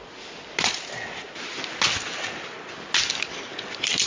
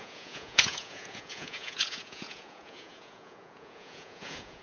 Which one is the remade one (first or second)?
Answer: second